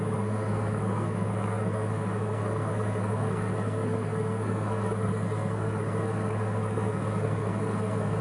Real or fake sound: fake